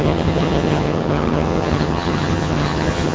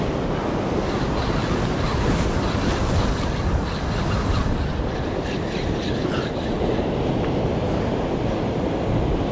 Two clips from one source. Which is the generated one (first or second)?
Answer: first